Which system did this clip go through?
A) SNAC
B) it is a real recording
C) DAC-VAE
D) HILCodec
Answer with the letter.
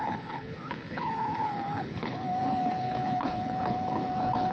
D